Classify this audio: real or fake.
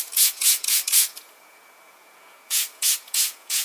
fake